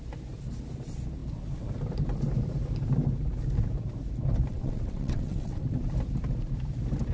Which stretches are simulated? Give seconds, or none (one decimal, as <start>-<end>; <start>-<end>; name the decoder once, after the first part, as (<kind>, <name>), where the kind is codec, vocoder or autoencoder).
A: 4.5-5.6 (vocoder, WaveNeXt)